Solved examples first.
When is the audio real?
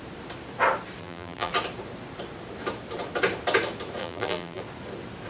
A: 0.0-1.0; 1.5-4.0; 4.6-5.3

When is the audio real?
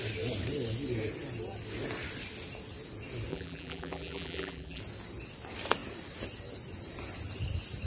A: 0.0-3.3; 4.8-7.9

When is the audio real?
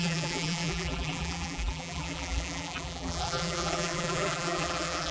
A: none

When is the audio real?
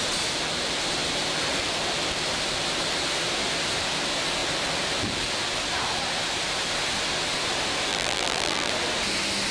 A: 0.0-7.9; 8.7-9.5